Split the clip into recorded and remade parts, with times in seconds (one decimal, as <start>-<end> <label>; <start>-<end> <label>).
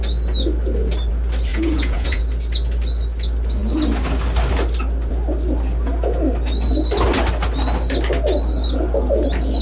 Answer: 0.0-1.5 recorded; 1.5-2.2 remade; 2.2-9.6 recorded